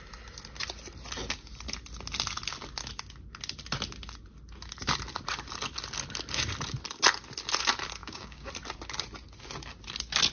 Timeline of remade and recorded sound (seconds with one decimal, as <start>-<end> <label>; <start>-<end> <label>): 0.0-8.0 recorded; 8.0-8.5 remade; 8.5-10.3 recorded